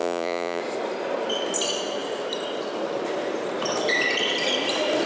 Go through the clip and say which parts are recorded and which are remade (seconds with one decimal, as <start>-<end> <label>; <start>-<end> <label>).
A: 0.0-0.6 remade; 0.6-5.1 recorded